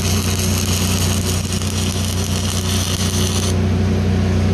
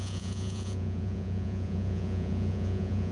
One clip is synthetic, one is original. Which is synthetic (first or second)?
second